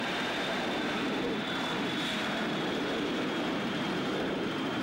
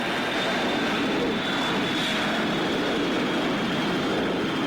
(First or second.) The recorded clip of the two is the second